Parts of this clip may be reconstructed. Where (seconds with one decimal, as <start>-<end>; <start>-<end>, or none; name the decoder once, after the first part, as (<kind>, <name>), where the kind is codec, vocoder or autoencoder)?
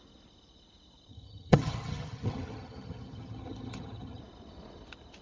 1.1-4.2 (vocoder, HiFi-GAN)